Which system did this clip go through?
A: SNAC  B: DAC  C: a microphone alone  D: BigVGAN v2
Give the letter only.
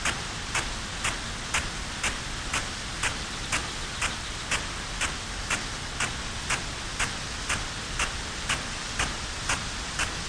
C